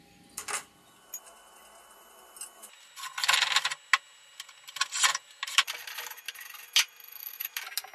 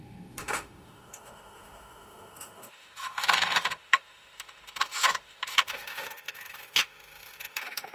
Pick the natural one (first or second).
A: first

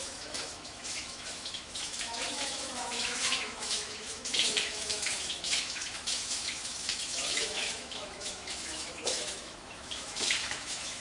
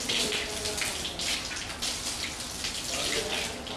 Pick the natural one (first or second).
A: second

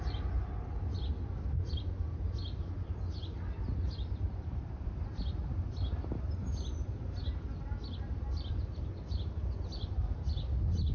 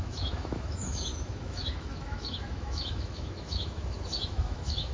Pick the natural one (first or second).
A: first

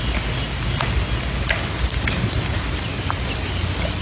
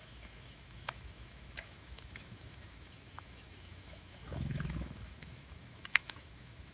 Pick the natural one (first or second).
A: first